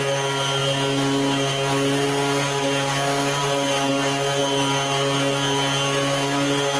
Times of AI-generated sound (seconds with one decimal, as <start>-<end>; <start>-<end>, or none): none